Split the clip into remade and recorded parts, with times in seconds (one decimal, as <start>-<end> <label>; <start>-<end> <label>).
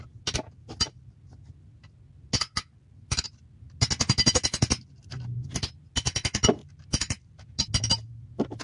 0.0-8.6 recorded